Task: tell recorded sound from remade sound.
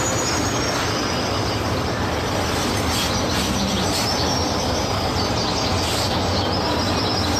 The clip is recorded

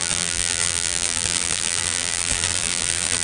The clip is remade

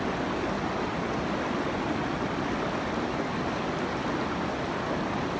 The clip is recorded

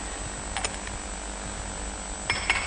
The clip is recorded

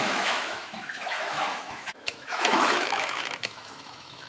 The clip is remade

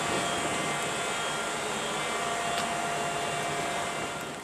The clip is recorded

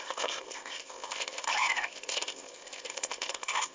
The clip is remade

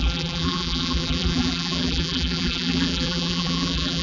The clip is remade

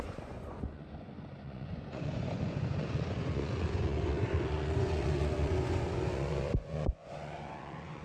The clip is remade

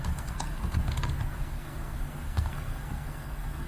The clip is remade